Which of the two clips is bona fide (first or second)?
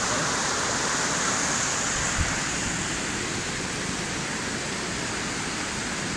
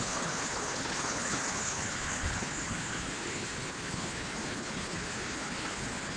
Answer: first